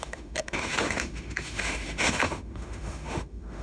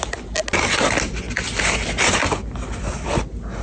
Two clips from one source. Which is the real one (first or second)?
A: second